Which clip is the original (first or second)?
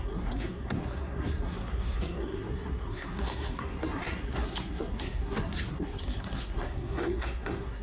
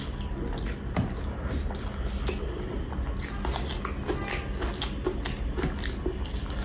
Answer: second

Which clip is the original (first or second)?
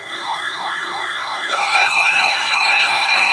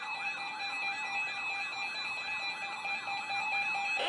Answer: second